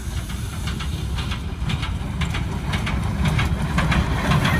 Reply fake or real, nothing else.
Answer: real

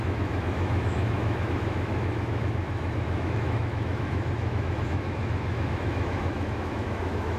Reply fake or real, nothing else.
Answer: fake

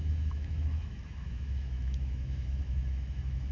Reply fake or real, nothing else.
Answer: fake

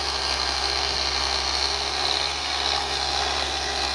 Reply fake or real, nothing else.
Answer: real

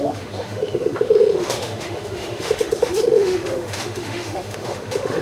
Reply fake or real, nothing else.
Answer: fake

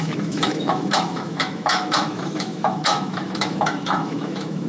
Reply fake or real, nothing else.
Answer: fake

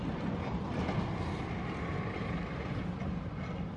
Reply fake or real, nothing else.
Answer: real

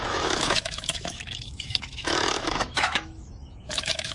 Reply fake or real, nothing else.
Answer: fake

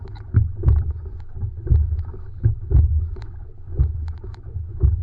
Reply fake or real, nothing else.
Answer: fake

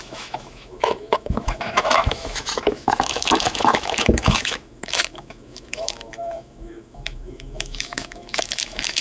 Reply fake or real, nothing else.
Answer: fake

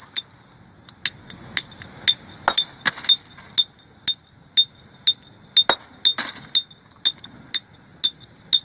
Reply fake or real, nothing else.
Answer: real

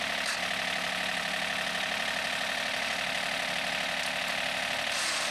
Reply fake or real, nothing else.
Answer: real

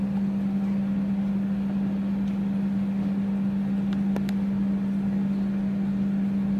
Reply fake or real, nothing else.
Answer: real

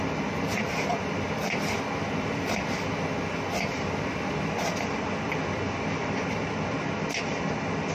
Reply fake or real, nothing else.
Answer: real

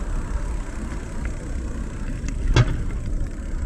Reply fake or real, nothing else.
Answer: real